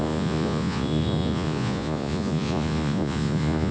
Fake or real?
fake